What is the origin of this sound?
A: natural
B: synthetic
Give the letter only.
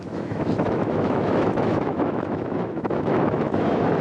B